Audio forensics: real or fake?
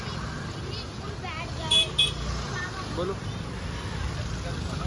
real